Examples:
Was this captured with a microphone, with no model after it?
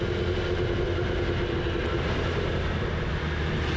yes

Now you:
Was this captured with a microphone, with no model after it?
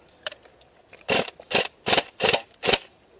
no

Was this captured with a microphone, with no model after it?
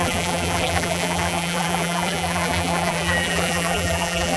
no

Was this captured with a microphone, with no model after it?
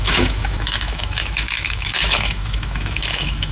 no